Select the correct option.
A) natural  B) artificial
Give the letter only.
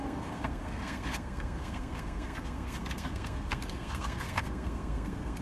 B